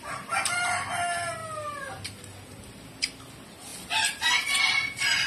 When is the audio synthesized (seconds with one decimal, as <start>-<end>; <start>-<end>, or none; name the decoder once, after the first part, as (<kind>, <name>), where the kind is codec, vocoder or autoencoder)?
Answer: none